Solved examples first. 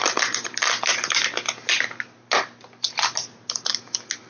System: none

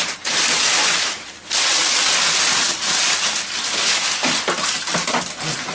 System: vocoder, BigVGAN v2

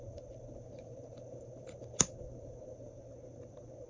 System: vocoder, BigVGAN v2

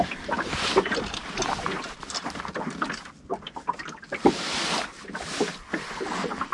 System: none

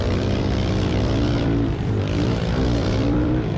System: vocoder, BigVGAN v2